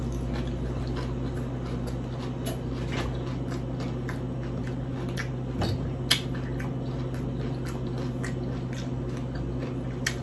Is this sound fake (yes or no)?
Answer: no